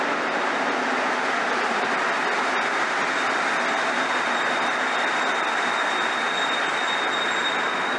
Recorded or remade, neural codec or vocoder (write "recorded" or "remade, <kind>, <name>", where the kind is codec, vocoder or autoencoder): recorded